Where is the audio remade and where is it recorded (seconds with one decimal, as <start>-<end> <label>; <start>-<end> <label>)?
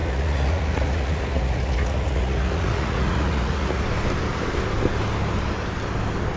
0.0-3.8 remade; 3.8-6.4 recorded